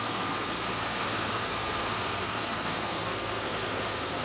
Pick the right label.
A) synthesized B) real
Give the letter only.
A